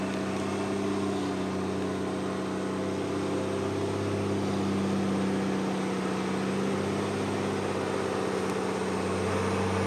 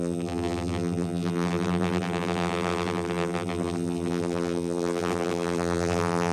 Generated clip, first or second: second